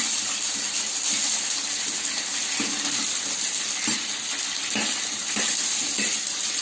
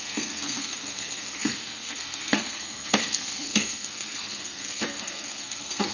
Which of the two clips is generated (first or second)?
second